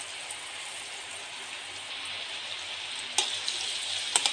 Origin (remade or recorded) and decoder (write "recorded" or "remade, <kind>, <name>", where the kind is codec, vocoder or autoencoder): recorded